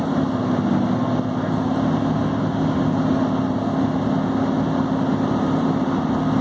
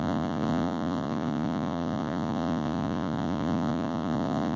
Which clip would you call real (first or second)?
first